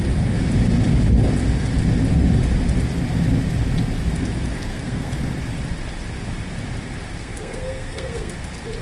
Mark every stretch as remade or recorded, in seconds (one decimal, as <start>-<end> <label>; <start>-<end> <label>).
0.0-4.7 recorded; 4.7-5.2 remade; 5.2-7.2 recorded; 7.2-8.3 remade; 8.3-8.8 recorded